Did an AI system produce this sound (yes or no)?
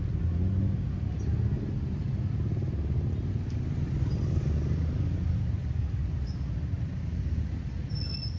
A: no